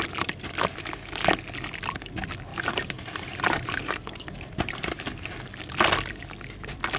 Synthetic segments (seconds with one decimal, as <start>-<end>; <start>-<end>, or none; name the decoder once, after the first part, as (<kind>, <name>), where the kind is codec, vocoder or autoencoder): 2.5-5.1 (vocoder, BigVGAN v2)